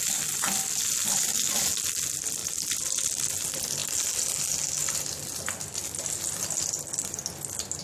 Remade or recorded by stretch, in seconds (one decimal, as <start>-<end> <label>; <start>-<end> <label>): 0.0-2.4 recorded; 2.4-3.3 remade; 3.3-7.8 recorded